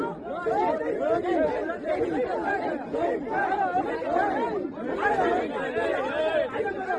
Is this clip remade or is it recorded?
recorded